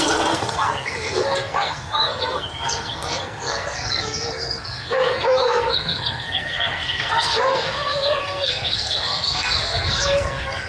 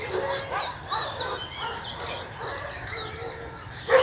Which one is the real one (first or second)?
second